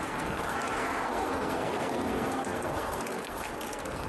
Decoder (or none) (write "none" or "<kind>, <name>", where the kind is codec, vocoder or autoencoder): codec, SNAC